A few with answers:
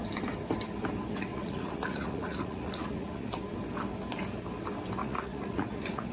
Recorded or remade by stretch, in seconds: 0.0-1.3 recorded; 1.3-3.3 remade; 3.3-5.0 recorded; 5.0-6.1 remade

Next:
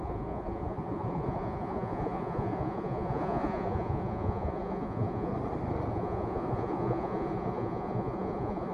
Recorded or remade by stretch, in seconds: 0.0-5.3 remade; 5.3-5.9 recorded; 5.9-8.7 remade

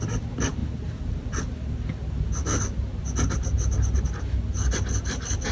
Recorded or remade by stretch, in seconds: 0.0-5.5 recorded

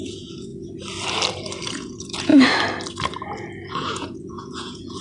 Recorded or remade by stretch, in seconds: 0.0-0.5 remade; 0.5-1.7 recorded; 1.7-2.3 remade; 2.3-3.7 recorded; 3.7-5.0 remade

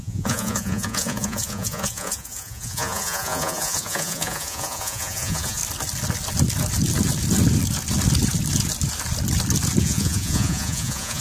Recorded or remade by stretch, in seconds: 0.0-5.6 remade; 5.6-9.8 recorded; 9.8-11.2 remade